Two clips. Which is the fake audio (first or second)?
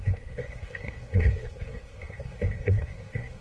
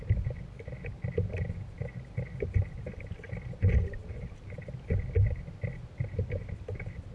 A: first